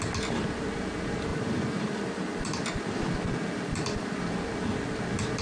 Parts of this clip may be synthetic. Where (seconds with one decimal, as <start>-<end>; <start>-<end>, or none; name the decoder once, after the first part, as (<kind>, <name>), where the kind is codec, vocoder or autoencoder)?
1.3-4.2 (vocoder, BigVGAN v2)